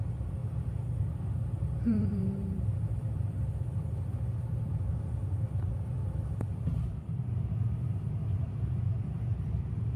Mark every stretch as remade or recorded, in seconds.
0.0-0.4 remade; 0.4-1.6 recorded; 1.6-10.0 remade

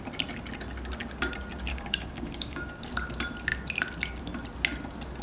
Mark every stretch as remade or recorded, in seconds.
0.0-1.7 recorded; 1.7-2.9 remade; 2.9-5.2 recorded